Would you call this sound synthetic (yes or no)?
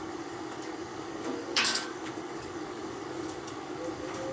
yes